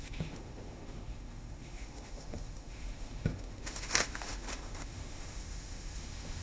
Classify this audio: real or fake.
fake